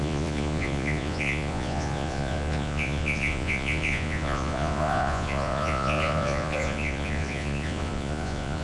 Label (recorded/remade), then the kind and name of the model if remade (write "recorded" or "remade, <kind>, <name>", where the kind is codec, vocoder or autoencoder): remade, vocoder, Vocos